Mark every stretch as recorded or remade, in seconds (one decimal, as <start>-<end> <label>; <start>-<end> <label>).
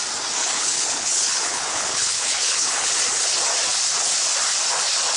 0.0-0.4 recorded; 0.4-2.9 remade; 2.9-5.2 recorded